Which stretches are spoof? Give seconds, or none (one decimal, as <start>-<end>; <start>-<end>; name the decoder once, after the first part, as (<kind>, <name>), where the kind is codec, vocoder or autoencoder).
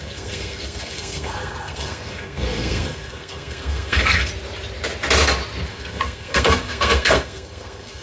0.0-4.3 (codec, SNAC); 5.7-8.0